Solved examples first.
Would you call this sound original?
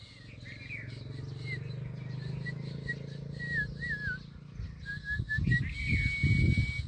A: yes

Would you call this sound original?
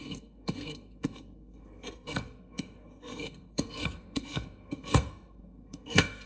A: no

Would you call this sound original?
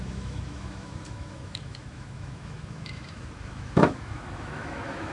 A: no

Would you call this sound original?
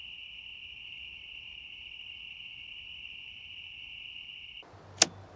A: yes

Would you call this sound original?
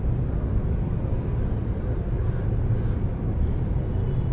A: yes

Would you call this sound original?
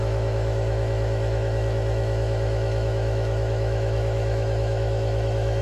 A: no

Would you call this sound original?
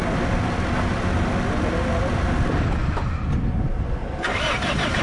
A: yes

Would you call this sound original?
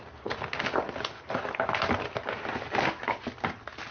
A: yes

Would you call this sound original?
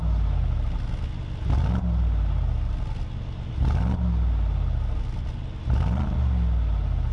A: yes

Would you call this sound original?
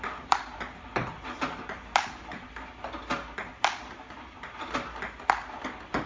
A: yes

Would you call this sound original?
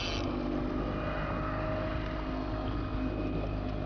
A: yes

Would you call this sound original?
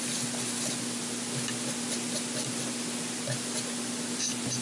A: yes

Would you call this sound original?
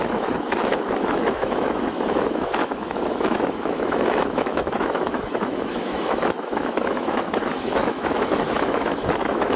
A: no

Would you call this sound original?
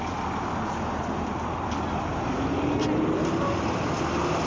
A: yes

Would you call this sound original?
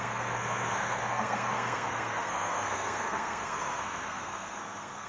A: no